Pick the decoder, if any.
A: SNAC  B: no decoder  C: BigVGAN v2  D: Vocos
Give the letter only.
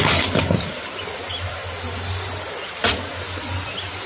B